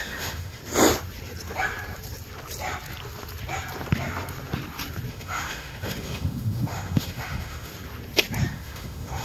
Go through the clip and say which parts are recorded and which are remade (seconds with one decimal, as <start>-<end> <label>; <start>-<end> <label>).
0.0-0.6 remade; 0.6-5.1 recorded; 5.1-7.7 remade; 7.7-8.5 recorded; 8.5-9.2 remade